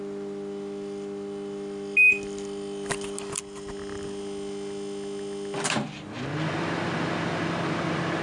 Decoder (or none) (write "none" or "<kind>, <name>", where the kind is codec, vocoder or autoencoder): none